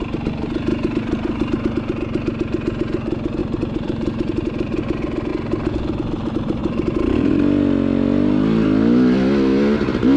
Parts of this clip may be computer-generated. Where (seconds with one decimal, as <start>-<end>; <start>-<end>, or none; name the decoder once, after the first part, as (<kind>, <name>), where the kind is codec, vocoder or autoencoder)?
3.4-4.8 (vocoder, BigVGAN v2); 6.6-7.3